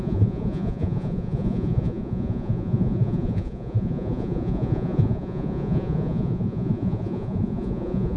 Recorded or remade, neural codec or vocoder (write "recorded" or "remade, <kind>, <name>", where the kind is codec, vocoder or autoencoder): remade, vocoder, Vocos